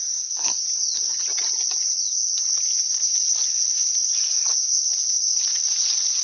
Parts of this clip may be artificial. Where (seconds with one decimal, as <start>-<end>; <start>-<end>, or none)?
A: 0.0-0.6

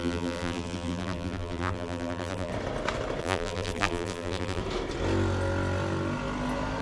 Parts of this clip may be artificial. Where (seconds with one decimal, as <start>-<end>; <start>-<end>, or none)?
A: 0.0-2.5; 3.2-4.6

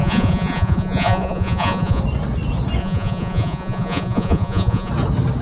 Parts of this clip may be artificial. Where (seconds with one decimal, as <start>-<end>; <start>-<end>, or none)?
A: 0.0-2.0; 2.8-4.9

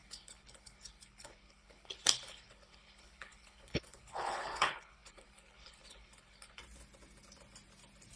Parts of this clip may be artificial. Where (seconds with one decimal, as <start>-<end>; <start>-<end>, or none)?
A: 0.0-6.6

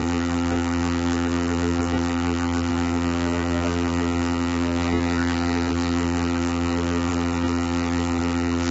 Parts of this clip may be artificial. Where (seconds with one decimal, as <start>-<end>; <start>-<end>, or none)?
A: 0.0-8.7

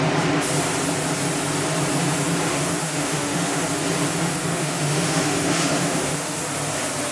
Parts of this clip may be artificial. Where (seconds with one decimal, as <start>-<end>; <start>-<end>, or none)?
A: 2.5-3.6; 4.5-6.4

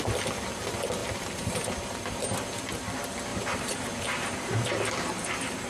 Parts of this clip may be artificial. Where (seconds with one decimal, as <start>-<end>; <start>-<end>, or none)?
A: 1.0-2.0; 3.3-4.7